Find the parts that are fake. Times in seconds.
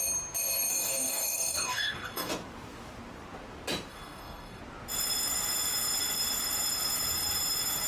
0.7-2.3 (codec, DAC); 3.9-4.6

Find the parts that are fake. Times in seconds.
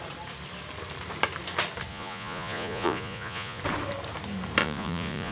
1.9-3.6 (vocoder, Vocos); 4.6-5.3